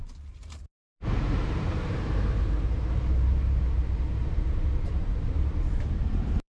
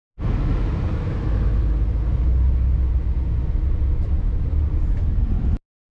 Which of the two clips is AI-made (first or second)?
first